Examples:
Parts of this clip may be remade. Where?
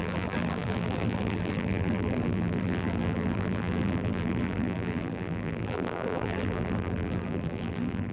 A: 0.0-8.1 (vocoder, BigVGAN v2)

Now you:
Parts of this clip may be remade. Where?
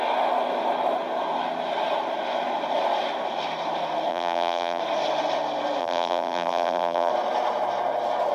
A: 4.1-4.8 (vocoder, BigVGAN v2); 5.8-7.1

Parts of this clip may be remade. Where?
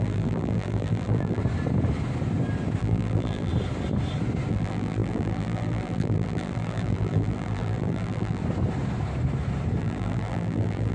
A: 0.0-1.4 (vocoder, BigVGAN v2); 2.8-3.5; 4.5-8.4; 9.8-10.9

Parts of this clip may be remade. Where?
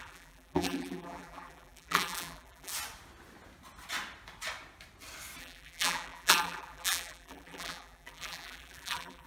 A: 0.0-2.7 (vocoder, BigVGAN v2); 5.4-9.3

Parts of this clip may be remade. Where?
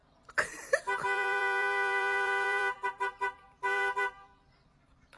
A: 0.0-5.2 (vocoder, BigVGAN v2)